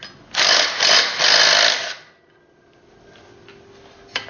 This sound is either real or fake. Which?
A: real